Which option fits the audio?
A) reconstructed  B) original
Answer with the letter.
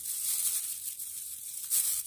A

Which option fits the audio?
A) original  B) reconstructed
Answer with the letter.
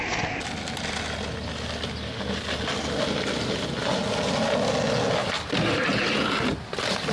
A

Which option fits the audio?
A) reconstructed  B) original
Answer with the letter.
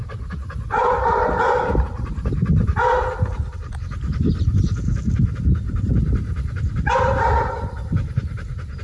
A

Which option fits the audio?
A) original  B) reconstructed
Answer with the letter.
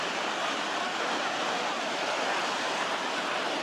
A